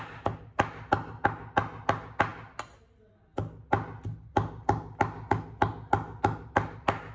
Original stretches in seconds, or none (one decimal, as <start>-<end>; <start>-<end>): 0.0-7.1